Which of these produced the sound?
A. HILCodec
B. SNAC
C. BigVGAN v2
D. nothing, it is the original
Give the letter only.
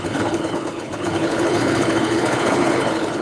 A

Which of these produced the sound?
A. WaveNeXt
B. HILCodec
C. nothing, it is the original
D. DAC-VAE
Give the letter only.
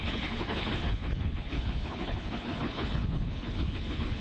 B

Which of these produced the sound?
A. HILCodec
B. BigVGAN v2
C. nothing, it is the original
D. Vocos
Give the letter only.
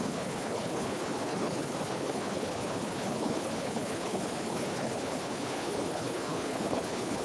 A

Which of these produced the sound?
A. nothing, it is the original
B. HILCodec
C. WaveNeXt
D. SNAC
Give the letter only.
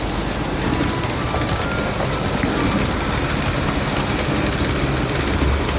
A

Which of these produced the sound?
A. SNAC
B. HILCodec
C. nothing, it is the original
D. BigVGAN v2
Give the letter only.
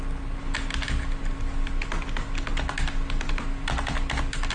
C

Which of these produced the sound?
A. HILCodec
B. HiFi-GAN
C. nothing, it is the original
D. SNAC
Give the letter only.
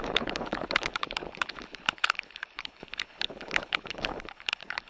A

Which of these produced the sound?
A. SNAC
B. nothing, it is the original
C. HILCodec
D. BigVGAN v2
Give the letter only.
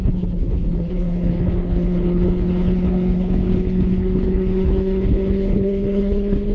C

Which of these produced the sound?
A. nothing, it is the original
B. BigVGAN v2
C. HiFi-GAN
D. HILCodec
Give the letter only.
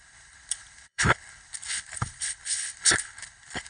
D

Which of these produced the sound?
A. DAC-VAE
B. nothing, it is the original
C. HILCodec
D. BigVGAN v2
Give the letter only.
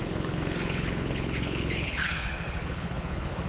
C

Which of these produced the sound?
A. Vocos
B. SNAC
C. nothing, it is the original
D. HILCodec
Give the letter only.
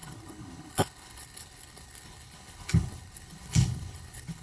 D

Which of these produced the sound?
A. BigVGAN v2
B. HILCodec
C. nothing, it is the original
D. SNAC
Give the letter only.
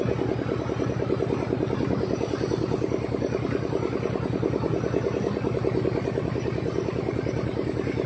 C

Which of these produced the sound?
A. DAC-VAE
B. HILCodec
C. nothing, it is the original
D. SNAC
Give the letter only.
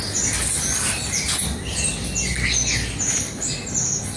C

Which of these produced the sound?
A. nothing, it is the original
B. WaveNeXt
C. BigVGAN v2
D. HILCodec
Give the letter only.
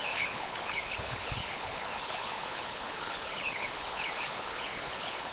D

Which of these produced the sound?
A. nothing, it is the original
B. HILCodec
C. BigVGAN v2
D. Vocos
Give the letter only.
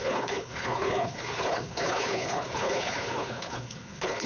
B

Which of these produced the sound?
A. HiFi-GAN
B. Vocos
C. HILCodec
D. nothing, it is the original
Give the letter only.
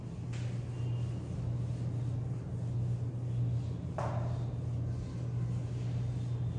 D